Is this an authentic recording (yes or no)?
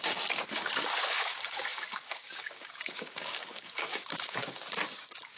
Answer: no